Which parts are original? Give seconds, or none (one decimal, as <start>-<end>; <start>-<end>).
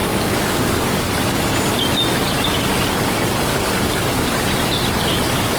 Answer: 1.1-3.5; 4.3-5.6